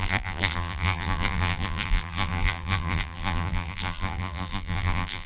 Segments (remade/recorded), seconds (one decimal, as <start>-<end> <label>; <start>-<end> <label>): 0.0-5.3 remade